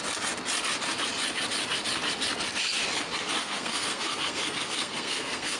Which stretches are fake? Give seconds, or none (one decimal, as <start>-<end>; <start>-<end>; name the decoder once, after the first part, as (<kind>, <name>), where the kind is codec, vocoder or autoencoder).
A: 3.4-5.6 (codec, SNAC)